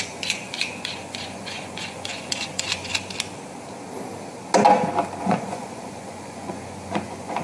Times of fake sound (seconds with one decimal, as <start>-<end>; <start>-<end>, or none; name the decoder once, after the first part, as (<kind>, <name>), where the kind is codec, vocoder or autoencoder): 0.0-2.9 (vocoder, Vocos); 5.2-7.4